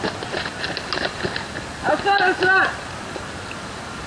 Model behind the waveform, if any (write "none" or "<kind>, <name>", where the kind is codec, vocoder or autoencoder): none